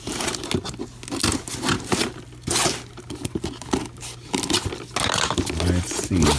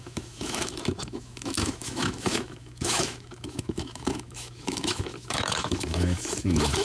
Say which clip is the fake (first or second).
second